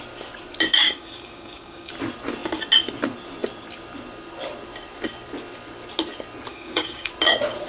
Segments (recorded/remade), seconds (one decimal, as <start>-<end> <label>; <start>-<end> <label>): 0.0-0.8 recorded; 0.8-1.9 remade; 1.9-6.5 recorded; 6.5-7.1 remade; 7.1-7.7 recorded